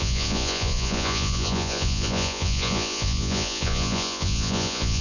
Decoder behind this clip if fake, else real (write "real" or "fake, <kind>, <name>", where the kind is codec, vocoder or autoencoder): fake, vocoder, Vocos